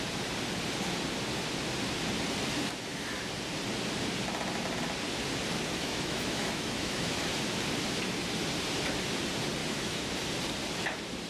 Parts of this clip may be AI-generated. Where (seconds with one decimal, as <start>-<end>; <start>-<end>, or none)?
5.5-7.3; 9.6-10.1